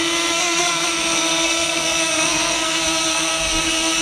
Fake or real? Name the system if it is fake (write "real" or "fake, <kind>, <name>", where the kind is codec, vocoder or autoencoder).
fake, codec, SNAC